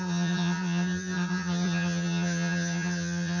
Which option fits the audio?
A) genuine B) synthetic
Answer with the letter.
B